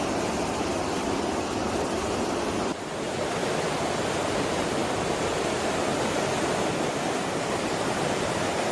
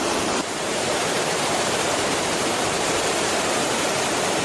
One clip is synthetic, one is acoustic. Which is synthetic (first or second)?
second